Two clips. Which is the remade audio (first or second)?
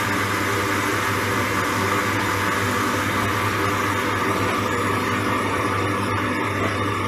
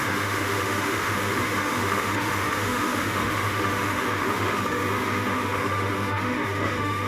second